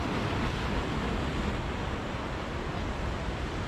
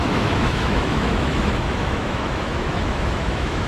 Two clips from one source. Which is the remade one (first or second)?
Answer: second